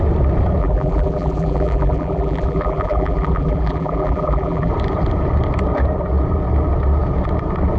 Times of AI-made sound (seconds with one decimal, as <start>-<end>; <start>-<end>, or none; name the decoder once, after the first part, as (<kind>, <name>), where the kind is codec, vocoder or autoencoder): 0.6-4.7 (vocoder, BigVGAN v2)